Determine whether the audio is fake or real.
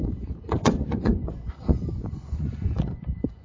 fake